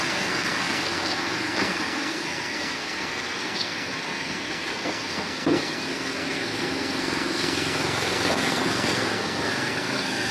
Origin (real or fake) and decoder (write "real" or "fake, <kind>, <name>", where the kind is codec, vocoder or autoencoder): fake, codec, SNAC